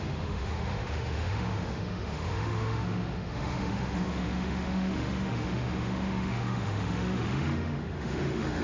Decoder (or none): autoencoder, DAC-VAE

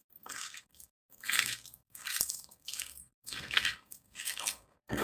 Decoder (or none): codec, SNAC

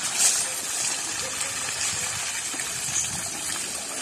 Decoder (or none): none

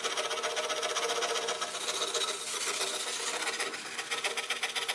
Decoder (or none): none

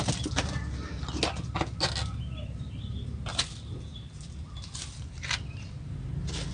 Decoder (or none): none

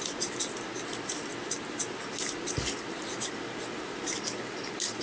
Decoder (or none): none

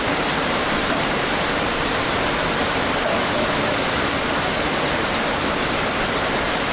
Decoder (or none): vocoder, BigVGAN v2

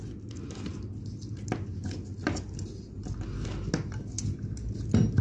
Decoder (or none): none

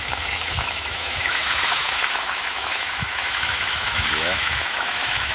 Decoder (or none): autoencoder, DAC-VAE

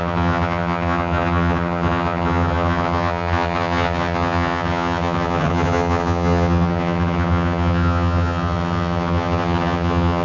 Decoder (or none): vocoder, HiFi-GAN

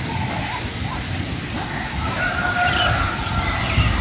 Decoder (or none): none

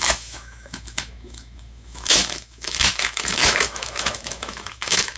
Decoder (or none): autoencoder, DAC-VAE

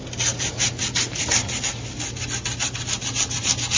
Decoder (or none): none